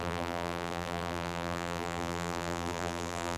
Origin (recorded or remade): remade